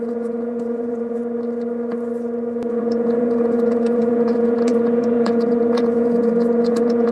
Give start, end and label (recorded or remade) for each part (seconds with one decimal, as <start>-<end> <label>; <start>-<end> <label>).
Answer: 0.0-1.2 remade; 1.2-2.7 recorded; 2.7-7.1 remade